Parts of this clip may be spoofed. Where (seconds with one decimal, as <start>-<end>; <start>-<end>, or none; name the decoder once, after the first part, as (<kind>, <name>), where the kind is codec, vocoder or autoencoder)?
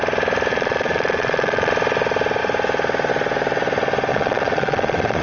0.5-1.7 (vocoder, Vocos); 4.1-5.2